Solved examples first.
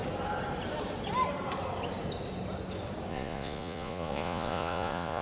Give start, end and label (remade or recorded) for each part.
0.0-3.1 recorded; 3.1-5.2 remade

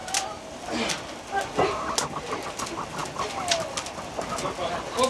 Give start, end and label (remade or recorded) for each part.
0.0-5.1 recorded

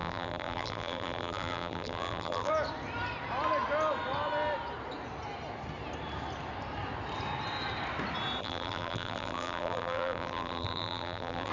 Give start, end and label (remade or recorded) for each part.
0.0-2.5 remade; 2.5-8.4 recorded; 8.4-11.5 remade

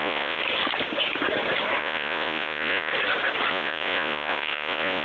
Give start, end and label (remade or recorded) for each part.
0.0-0.4 remade; 0.4-1.8 recorded; 1.8-2.9 remade; 2.9-3.5 recorded; 3.5-5.0 remade

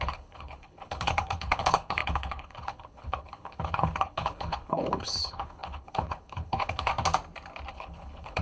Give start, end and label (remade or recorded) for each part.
0.0-6.9 remade; 6.9-7.7 recorded; 7.7-8.4 remade